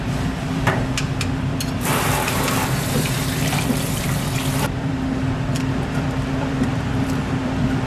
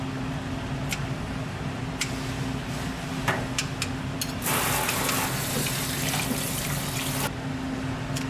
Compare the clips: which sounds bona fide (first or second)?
second